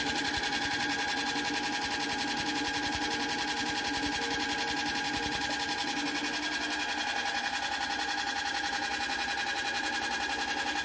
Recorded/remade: recorded